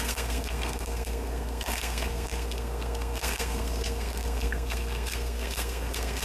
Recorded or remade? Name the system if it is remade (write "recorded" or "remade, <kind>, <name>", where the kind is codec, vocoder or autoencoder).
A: remade, codec, SNAC